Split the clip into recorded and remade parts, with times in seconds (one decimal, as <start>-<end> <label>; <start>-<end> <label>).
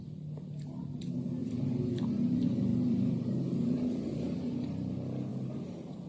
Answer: 0.0-1.4 recorded; 1.4-2.0 remade; 2.0-2.7 recorded; 2.7-4.5 remade; 4.5-5.3 recorded; 5.3-6.1 remade